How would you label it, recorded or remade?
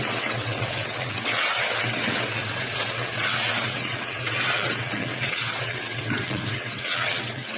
remade